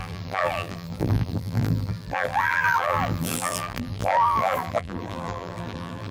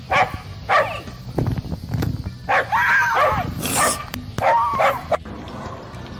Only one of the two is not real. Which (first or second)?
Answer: first